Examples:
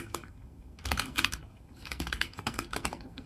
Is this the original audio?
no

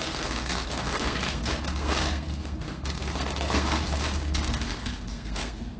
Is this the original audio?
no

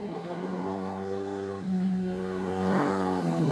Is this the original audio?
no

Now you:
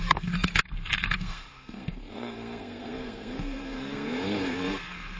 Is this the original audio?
no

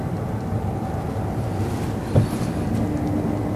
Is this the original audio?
yes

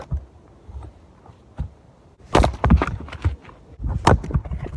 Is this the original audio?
yes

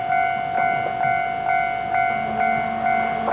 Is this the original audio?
yes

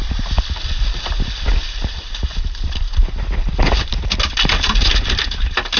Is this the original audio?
yes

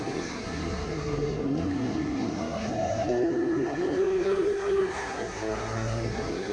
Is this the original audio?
no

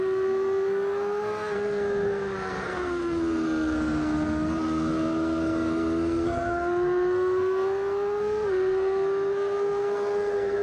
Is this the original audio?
no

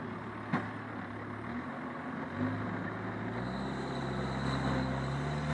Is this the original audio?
yes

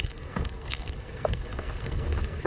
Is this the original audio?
no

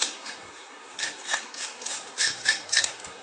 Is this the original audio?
no